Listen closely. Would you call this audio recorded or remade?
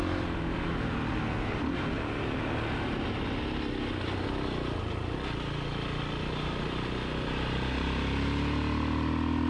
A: recorded